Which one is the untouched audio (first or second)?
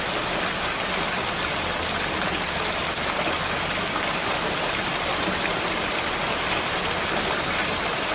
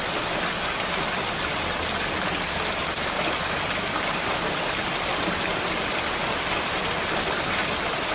first